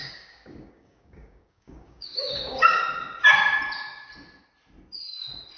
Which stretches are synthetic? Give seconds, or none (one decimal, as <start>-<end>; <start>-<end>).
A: 0.0-2.8

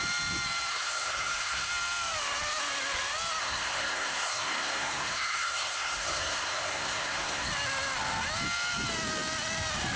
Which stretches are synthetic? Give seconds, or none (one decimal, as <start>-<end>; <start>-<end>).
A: 0.7-1.7; 3.4-7.5

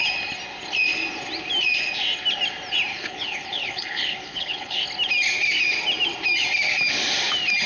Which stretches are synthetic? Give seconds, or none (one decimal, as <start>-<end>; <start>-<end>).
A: 2.9-4.8

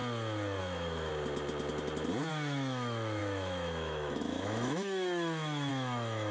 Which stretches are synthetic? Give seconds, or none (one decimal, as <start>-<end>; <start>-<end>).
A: 0.6-1.1; 2.3-6.3

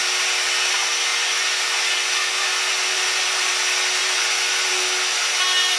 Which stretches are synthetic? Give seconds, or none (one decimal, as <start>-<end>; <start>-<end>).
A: 1.1-3.5; 4.0-4.7

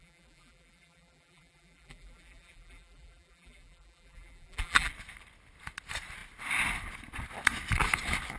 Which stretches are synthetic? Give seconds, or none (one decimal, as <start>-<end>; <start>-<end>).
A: 0.0-4.9

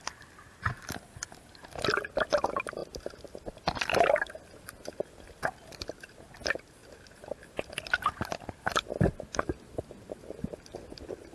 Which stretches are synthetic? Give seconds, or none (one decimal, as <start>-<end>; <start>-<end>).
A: none

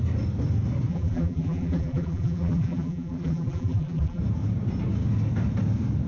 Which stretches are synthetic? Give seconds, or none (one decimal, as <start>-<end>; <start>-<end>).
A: 0.9-4.2